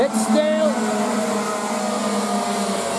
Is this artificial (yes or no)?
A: no